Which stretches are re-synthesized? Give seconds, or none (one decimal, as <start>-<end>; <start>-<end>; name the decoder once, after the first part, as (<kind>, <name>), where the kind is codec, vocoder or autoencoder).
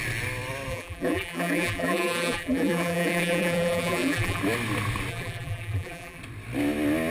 0.7-4.4 (vocoder, BigVGAN v2); 5.1-6.2